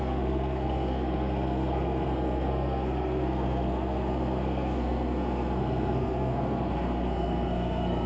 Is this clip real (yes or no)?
no